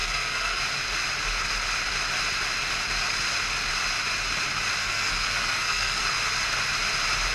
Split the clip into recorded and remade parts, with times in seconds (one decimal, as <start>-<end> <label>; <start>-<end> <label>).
0.0-0.6 remade; 0.6-4.8 recorded; 4.8-6.0 remade; 6.0-7.3 recorded

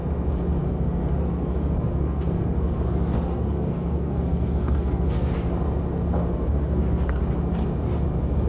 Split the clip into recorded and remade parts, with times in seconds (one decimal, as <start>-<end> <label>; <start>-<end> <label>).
0.0-0.6 recorded; 0.6-5.3 remade; 5.3-6.3 recorded; 6.3-7.2 remade; 7.2-8.5 recorded

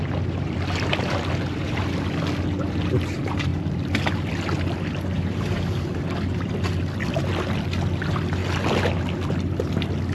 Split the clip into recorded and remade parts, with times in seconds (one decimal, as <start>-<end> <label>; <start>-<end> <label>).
0.0-10.1 recorded